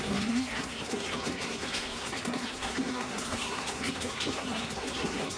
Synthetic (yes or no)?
yes